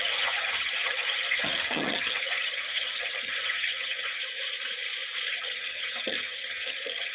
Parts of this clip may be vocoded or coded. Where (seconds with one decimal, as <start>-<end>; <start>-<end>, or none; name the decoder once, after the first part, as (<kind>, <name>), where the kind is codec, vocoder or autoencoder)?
0.0-4.2 (vocoder, HiFi-GAN); 5.3-7.1